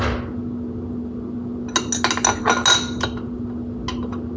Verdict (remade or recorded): recorded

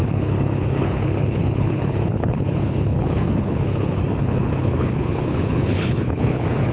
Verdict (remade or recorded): remade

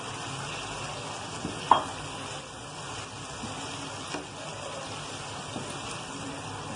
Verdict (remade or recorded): recorded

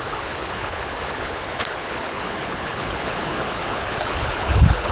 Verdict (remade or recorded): remade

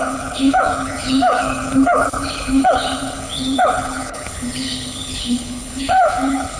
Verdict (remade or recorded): remade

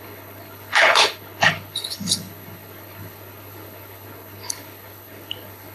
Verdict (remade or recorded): remade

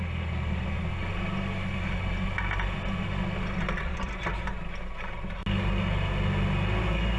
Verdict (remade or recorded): recorded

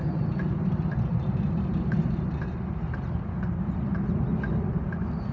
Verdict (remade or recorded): recorded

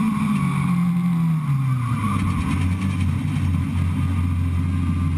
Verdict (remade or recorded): recorded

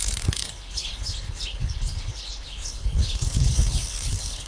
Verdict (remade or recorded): remade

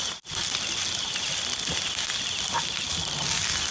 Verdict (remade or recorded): recorded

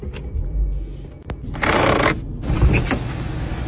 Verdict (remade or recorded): recorded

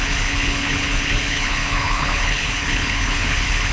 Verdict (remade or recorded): remade